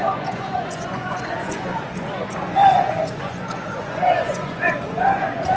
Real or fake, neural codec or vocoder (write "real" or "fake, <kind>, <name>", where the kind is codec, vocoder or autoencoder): fake, vocoder, Vocos